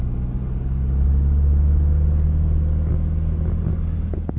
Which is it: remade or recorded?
recorded